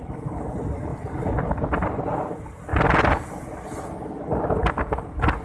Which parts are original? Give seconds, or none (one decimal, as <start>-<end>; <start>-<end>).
0.0-5.4